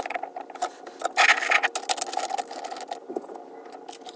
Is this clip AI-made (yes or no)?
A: no